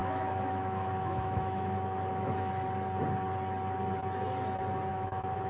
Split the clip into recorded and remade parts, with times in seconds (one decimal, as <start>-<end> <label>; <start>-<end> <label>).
0.0-2.5 remade; 2.5-4.9 recorded; 4.9-5.5 remade